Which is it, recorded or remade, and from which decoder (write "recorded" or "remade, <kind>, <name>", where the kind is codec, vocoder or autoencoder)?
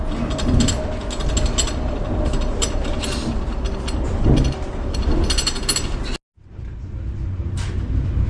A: recorded